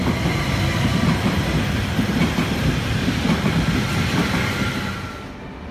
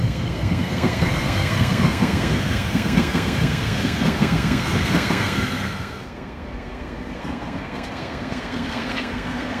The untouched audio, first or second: first